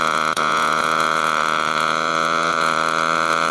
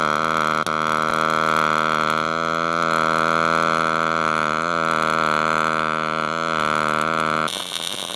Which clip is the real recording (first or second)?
second